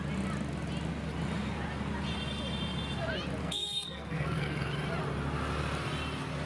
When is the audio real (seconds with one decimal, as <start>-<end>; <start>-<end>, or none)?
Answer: 0.0-3.4; 4.7-6.5